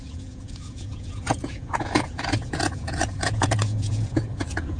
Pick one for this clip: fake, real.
fake